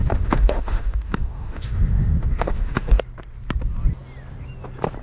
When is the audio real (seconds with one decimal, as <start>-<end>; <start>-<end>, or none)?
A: 3.0-5.0